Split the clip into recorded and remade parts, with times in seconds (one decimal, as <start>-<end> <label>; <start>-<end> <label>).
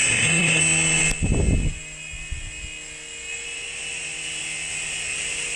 0.0-0.6 remade; 0.6-5.6 recorded